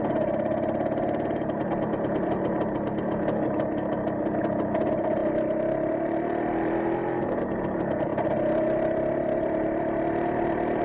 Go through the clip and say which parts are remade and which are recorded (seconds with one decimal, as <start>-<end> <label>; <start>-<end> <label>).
0.0-10.8 recorded